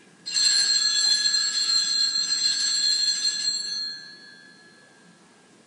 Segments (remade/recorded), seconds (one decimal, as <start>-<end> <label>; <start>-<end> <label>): 0.0-0.4 recorded; 0.4-3.8 remade; 3.8-5.7 recorded